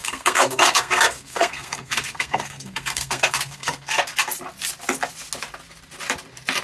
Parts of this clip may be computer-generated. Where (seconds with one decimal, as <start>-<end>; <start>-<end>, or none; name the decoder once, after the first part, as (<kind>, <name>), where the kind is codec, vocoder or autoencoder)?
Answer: 0.0-4.0 (codec, SNAC)

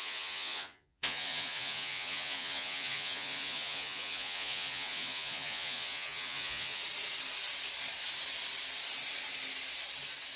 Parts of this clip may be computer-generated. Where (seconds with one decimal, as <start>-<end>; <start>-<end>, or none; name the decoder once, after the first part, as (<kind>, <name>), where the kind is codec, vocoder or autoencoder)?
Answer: 0.0-6.8 (vocoder, Vocos)

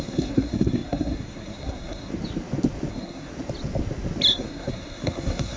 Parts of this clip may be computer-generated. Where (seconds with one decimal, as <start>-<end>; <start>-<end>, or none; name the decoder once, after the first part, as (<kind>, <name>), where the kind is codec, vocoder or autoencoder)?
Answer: 0.0-2.1 (codec, SNAC); 2.9-3.3; 4.3-5.6

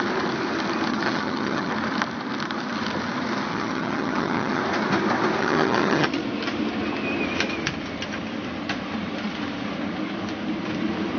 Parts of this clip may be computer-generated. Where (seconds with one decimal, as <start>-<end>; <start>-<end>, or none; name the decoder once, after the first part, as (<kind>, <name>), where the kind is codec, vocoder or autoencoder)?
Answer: 0.9-1.7 (vocoder, HiFi-GAN); 3.5-4.6; 5.4-6.2

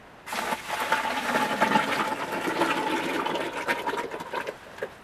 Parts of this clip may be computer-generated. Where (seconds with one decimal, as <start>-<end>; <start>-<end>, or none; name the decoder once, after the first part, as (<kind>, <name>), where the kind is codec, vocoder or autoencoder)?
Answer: 2.1-3.1 (vocoder, BigVGAN v2); 3.7-4.6

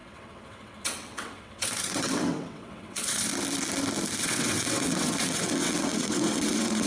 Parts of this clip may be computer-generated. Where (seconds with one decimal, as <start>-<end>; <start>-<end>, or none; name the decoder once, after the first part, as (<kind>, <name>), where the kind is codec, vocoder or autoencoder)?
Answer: 0.0-3.3 (vocoder, WaveNeXt); 4.2-6.9

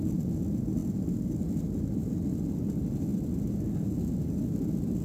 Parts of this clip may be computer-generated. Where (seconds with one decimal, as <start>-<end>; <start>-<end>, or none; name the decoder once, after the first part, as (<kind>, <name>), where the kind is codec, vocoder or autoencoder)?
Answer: none

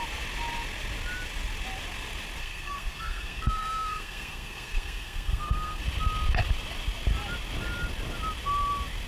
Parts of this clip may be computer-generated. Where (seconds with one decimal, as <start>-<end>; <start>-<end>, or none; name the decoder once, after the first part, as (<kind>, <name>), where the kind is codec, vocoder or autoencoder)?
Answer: 2.4-5.8 (codec, SNAC)